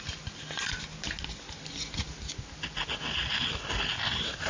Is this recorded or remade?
recorded